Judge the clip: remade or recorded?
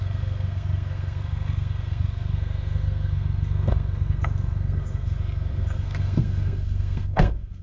remade